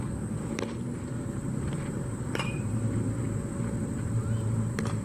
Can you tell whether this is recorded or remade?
remade